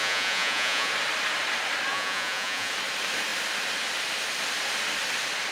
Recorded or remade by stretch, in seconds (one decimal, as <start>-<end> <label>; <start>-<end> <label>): 0.0-0.9 remade; 0.9-1.9 recorded; 1.9-2.7 remade; 2.7-5.5 recorded